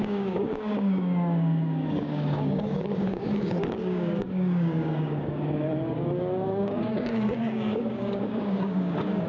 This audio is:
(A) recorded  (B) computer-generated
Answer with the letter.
B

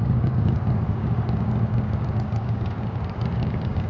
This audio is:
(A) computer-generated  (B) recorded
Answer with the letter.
A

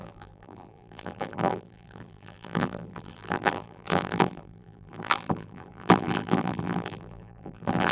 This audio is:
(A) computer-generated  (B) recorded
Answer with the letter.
A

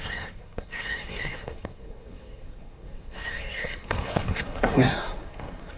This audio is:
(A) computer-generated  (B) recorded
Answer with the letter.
A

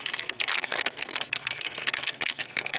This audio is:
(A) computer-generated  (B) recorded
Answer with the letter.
A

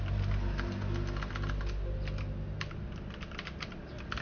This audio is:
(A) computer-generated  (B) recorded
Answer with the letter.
B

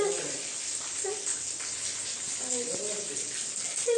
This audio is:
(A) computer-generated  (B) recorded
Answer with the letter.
B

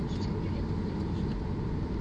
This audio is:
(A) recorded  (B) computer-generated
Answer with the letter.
B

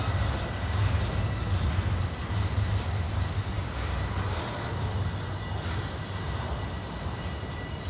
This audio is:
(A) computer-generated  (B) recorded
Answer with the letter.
B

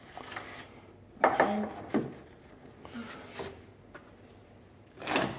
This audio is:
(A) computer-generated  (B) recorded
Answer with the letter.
B